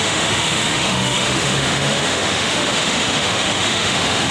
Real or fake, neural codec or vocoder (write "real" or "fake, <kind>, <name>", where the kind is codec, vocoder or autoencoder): fake, autoencoder, DAC-VAE